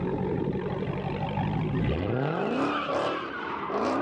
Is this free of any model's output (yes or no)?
no